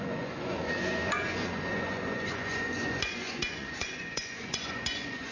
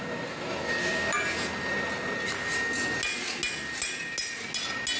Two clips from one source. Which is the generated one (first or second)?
first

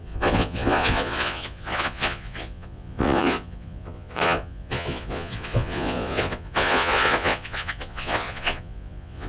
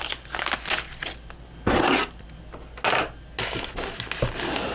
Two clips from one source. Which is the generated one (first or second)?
first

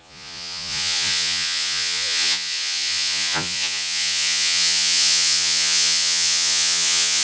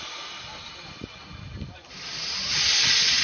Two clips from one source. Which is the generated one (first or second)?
first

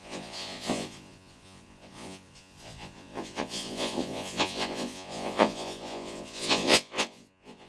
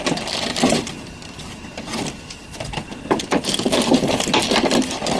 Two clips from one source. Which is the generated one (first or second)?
first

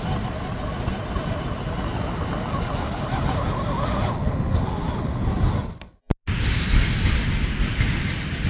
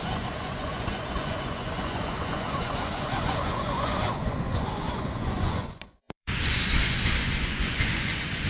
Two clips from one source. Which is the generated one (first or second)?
second